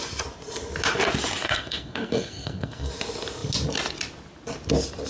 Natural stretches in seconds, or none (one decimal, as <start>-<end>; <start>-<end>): 0.0-1.4; 2.9-5.1